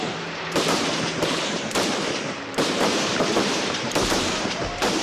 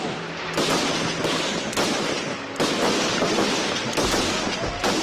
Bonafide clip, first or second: second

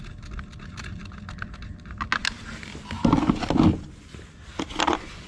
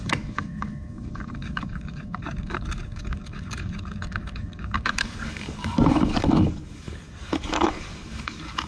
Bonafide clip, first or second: first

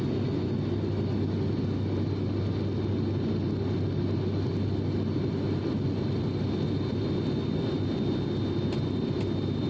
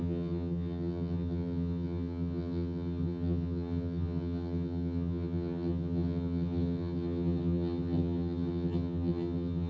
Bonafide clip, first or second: first